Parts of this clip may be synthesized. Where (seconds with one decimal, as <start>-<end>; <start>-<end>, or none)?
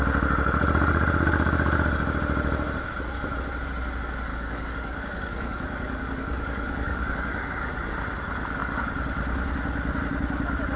4.3-7.9